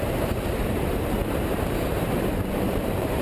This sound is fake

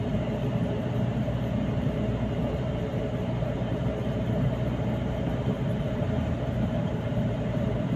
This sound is fake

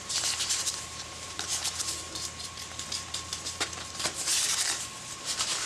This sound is fake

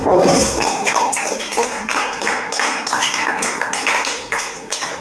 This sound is fake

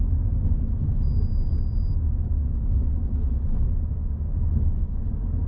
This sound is real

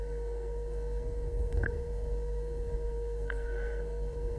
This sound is fake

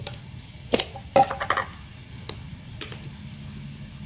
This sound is real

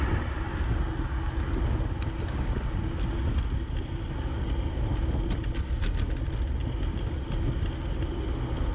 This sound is real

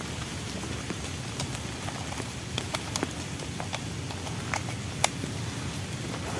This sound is real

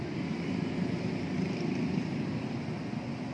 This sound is real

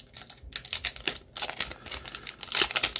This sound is real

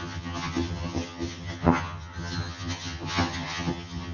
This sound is fake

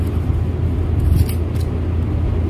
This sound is real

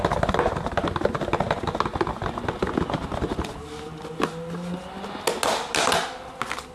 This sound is real